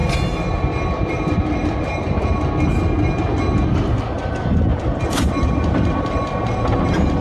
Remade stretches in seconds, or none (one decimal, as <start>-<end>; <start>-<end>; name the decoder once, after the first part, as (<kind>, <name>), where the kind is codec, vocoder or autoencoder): 4.7-6.3 (vocoder, BigVGAN v2)